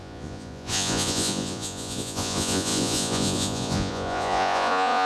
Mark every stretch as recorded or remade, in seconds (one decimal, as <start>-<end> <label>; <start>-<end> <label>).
0.0-5.1 remade